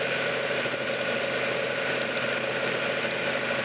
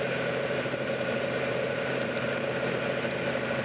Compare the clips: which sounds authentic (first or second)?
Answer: first